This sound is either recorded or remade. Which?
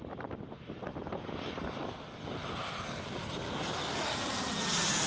recorded